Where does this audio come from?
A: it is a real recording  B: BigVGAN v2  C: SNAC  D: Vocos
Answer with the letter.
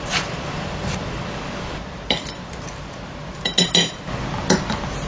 A